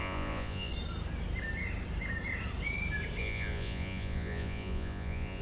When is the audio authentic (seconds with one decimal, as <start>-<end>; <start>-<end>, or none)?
0.7-3.2